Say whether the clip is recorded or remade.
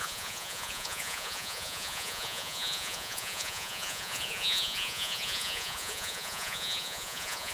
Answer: remade